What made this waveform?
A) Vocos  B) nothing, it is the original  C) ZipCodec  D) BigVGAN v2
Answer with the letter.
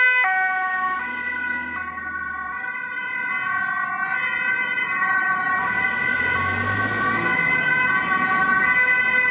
B